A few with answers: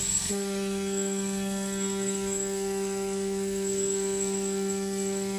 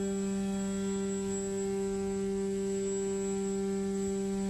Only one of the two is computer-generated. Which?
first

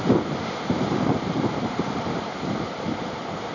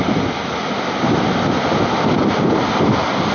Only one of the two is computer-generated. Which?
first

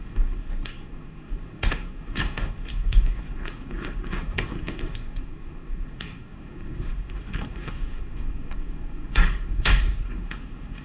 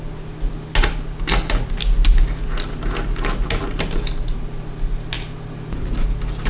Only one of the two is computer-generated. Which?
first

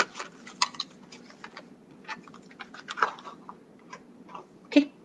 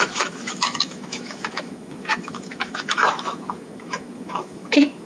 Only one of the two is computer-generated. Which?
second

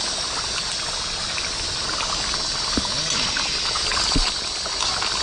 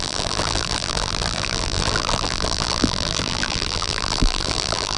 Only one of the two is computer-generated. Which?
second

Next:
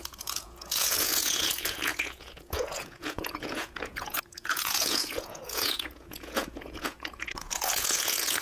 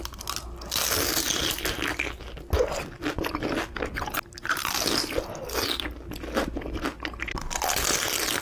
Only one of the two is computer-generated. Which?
first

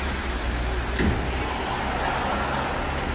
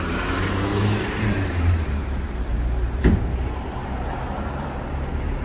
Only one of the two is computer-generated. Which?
second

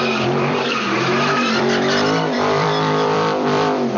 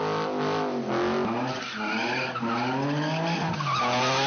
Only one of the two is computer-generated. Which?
first